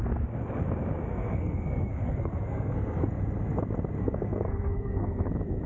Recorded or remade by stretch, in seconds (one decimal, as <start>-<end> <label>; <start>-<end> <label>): 0.0-1.1 recorded; 1.1-3.1 remade; 3.1-4.0 recorded; 4.0-5.3 remade; 5.3-5.7 recorded